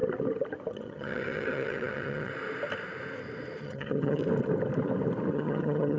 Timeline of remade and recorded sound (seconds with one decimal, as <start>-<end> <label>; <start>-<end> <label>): 0.0-0.7 recorded; 0.7-2.3 remade; 2.3-3.6 recorded; 3.6-4.2 remade; 4.2-5.3 recorded; 5.3-6.0 remade